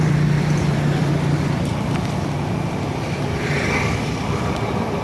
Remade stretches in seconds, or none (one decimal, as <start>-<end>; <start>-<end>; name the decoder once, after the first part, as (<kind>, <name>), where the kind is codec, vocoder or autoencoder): 1.0-4.0 (vocoder, BigVGAN v2)